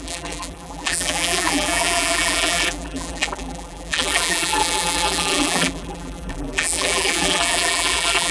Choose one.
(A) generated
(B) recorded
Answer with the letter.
A